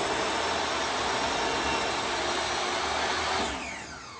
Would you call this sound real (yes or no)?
yes